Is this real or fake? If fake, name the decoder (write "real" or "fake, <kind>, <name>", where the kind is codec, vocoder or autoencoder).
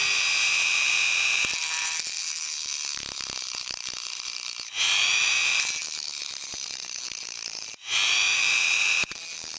fake, vocoder, BigVGAN v2